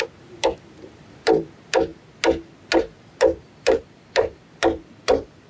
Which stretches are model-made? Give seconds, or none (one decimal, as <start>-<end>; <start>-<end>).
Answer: 0.0-1.9; 3.2-5.5

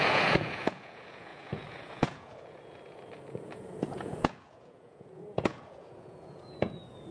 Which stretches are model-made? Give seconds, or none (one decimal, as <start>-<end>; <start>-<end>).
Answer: 0.0-7.1

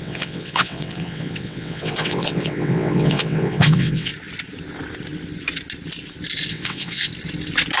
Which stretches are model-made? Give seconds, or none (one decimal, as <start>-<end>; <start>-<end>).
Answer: 0.0-4.1; 6.5-7.1

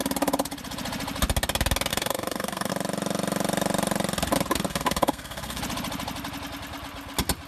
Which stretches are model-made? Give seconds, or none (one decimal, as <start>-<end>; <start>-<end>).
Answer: 1.9-2.7; 4.7-5.6

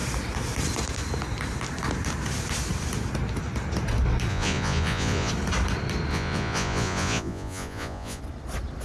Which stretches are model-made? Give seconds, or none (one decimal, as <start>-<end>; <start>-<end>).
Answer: 4.3-5.3; 6.1-8.2

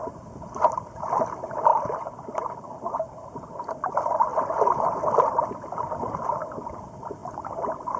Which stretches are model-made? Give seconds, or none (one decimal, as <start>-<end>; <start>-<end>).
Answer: none